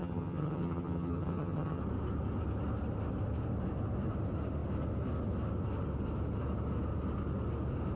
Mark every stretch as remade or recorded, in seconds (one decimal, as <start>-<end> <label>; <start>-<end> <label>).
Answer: 0.0-1.8 remade; 1.8-8.0 recorded